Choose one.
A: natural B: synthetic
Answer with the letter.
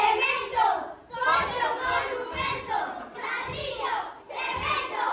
A